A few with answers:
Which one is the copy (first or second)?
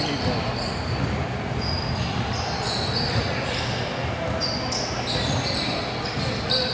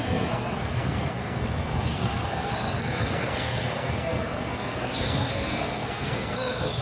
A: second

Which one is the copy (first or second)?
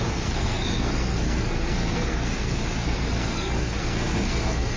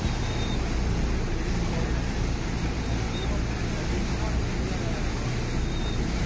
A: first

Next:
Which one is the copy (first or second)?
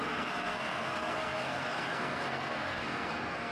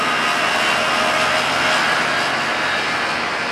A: first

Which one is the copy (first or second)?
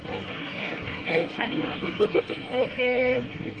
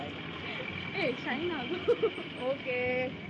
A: first